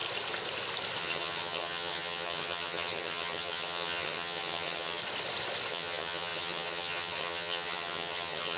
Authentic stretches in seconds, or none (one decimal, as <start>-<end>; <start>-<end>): 0.0-1.0; 5.0-5.7